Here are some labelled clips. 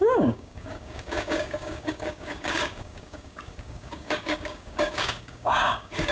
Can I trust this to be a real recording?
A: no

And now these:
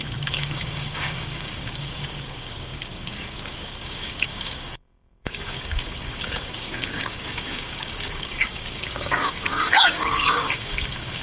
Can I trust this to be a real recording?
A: no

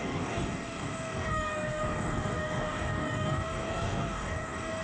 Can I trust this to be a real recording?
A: no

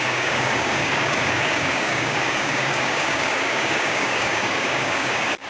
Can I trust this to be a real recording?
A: no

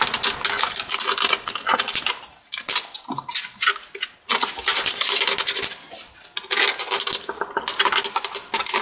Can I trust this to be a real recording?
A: yes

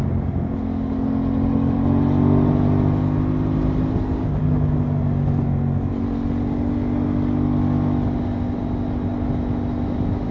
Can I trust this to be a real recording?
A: yes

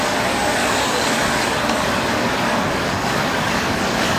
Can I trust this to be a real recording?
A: no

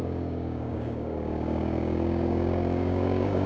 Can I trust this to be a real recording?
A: no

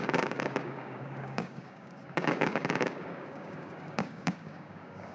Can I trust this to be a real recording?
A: no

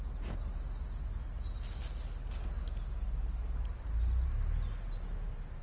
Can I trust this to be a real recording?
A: yes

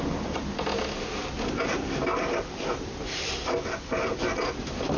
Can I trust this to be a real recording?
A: yes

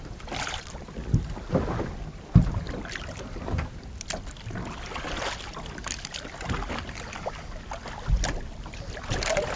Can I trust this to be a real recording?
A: yes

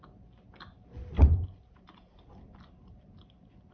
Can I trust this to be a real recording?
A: yes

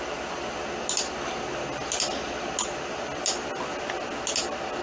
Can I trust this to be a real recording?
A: yes